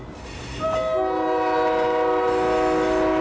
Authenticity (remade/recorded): recorded